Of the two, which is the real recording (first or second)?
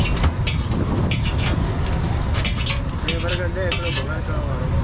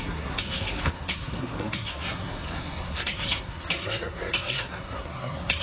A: first